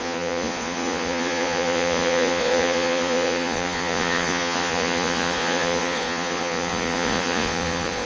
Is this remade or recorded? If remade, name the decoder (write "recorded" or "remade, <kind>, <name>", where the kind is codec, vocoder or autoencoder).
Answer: remade, vocoder, Vocos